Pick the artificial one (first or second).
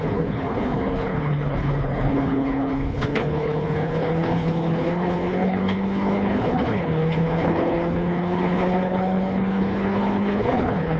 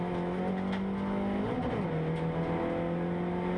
first